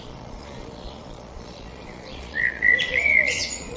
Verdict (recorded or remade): remade